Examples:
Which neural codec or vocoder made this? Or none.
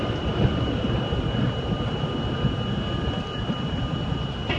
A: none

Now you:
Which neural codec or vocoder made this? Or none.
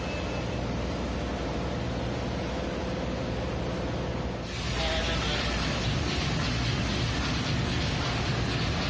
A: none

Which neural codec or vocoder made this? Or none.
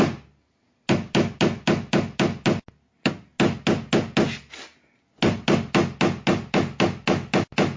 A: none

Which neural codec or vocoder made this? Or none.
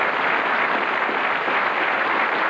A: none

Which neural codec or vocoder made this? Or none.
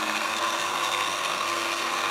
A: codec, SNAC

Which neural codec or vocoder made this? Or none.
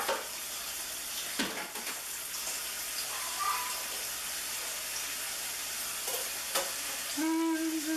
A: none